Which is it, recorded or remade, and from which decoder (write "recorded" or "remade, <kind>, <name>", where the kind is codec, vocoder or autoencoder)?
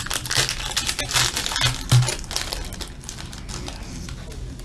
recorded